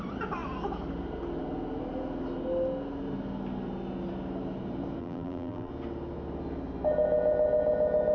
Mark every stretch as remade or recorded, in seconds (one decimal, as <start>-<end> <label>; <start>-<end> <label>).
0.0-5.0 recorded; 5.0-5.7 remade; 5.7-8.1 recorded